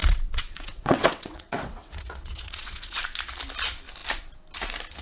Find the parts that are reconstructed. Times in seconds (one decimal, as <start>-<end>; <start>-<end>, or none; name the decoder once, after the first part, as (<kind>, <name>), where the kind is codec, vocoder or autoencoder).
0.0-3.0 (vocoder, WaveNeXt)